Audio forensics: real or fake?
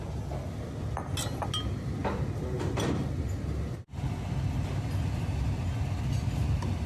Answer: real